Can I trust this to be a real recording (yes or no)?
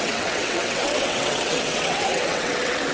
no